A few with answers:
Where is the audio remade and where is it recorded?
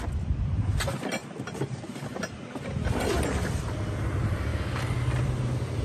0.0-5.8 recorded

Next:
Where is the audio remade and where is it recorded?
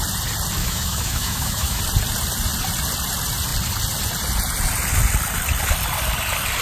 0.0-0.6 recorded; 0.6-1.8 remade; 1.8-6.6 recorded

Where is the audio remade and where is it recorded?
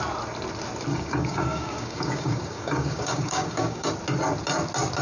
0.0-0.9 recorded; 0.9-3.9 remade; 3.9-5.0 recorded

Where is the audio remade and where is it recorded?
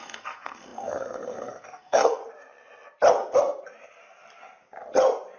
0.0-2.2 remade; 2.2-5.4 recorded